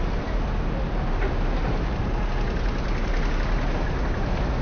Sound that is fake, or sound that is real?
real